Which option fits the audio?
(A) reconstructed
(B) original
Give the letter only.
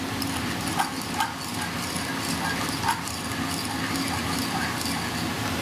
B